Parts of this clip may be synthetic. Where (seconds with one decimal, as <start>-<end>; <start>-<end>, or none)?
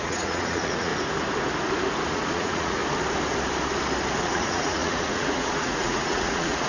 0.0-0.9; 2.1-2.8; 4.2-6.7